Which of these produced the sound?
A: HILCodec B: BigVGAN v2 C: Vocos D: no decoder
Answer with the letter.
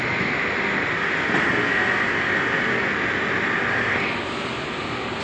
D